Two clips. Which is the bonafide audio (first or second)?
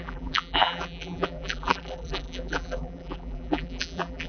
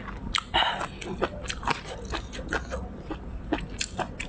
second